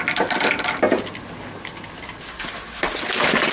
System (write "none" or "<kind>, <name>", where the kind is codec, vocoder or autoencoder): none